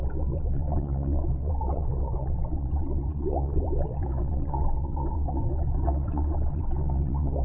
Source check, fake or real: fake